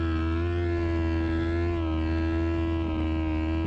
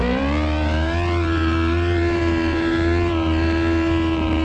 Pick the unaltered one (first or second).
first